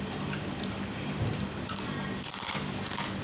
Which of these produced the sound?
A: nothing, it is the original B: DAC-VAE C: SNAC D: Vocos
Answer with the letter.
A